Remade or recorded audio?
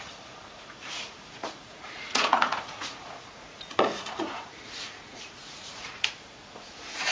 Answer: remade